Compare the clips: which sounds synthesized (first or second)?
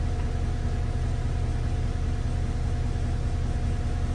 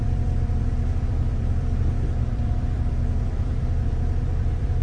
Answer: second